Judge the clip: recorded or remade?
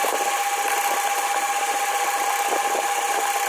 recorded